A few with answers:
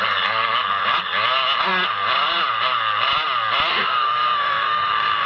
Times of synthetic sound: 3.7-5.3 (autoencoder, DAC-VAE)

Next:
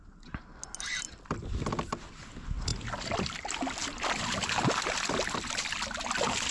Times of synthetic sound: none

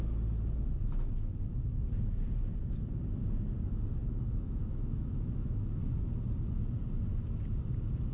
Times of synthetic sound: 4.0-5.8 (autoencoder, DAC-VAE)

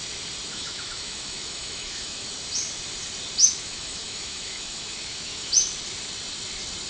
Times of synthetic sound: 0.5-2.3 (autoencoder, DAC-VAE); 3.4-5.5

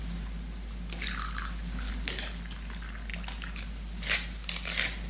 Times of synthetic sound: none

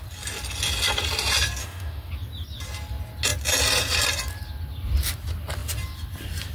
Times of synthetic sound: 1.6-2.1 (autoencoder, DAC-VAE)

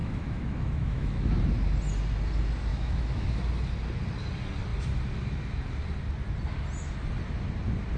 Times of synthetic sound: 0.0-1.3 (autoencoder, DAC-VAE); 2.7-3.4